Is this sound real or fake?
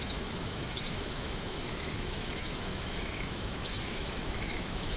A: fake